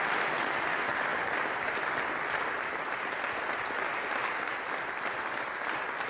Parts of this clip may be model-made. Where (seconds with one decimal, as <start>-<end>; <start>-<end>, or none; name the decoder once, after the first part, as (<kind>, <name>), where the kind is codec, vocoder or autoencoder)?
1.1-3.4 (vocoder, BigVGAN v2)